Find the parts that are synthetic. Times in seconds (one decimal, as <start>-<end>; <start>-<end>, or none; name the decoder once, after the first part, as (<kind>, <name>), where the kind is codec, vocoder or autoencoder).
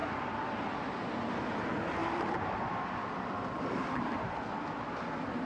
2.0-4.2 (vocoder, BigVGAN v2)